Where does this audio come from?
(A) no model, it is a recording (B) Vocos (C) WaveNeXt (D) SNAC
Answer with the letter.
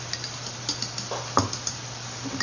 A